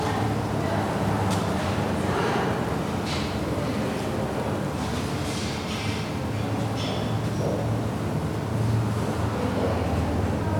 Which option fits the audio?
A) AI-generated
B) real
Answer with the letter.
B